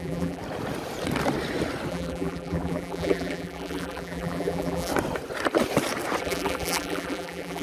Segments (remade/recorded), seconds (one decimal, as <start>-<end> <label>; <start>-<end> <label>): 0.0-0.4 remade; 0.4-1.9 recorded; 1.9-4.9 remade; 4.9-6.2 recorded; 6.2-7.6 remade